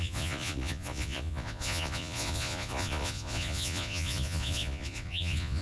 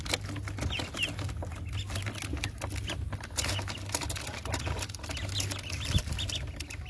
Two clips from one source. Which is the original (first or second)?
second